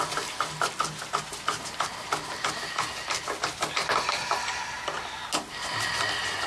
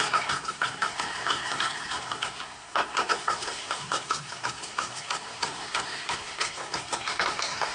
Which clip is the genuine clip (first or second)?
first